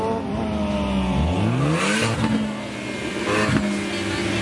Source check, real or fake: real